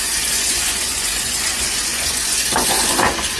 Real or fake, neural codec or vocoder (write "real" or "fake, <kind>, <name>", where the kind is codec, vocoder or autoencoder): fake, vocoder, Vocos